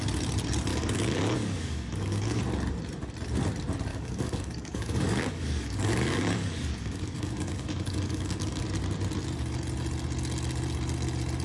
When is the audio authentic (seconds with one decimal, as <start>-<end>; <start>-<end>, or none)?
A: 0.0-0.7; 2.4-3.9; 8.6-11.4